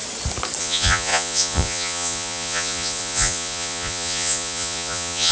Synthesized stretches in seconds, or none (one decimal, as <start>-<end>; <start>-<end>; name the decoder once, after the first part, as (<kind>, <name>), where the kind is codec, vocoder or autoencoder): 0.6-5.3 (vocoder, Vocos)